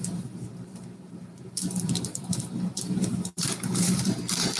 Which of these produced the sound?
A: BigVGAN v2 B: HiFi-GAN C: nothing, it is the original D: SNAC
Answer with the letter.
A